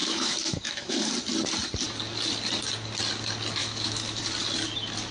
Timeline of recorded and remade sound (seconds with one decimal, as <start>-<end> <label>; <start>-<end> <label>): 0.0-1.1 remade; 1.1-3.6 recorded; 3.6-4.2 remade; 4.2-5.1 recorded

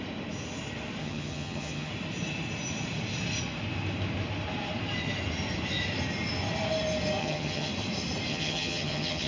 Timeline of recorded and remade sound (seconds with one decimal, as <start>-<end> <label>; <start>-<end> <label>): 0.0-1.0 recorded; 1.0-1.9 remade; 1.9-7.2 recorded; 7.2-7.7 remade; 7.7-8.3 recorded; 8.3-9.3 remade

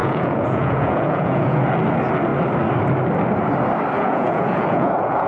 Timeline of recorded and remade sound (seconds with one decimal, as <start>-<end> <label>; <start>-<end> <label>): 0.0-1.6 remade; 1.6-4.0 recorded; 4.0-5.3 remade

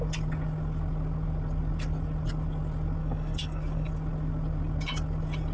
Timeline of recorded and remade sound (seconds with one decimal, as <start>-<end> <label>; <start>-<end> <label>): 0.0-3.0 recorded; 3.0-3.9 remade; 3.9-5.5 recorded

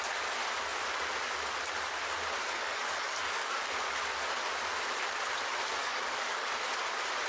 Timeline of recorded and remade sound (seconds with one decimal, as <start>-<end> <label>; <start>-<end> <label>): 0.0-2.4 recorded; 2.4-3.6 remade; 3.6-5.8 recorded; 5.8-6.5 remade; 6.5-7.3 recorded